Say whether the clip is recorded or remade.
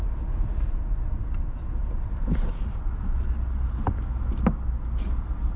recorded